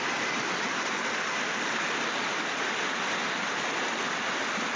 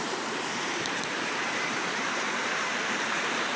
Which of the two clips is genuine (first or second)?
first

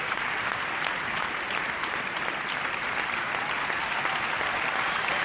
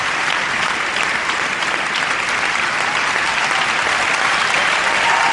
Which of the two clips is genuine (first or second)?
first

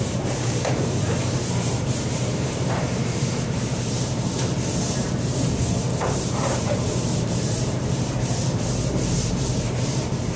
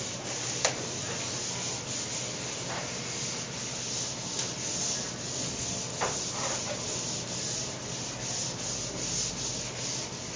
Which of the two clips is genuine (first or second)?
second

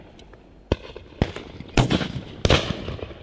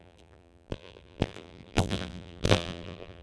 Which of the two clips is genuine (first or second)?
first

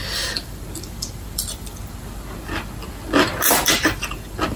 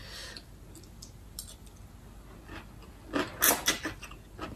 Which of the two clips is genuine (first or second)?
second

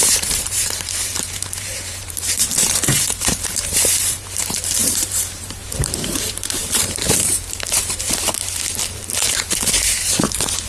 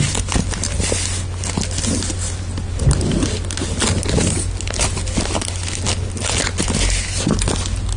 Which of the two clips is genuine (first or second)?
second